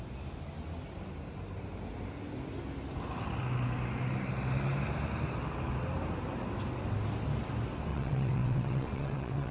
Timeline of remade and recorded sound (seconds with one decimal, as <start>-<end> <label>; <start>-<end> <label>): 0.0-7.9 recorded; 7.9-9.5 remade